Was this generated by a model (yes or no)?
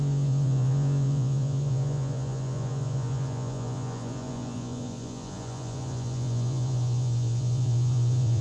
yes